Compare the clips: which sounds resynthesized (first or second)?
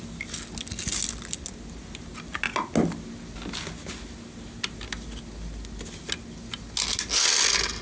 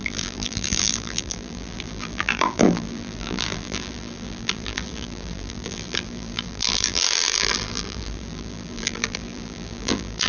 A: second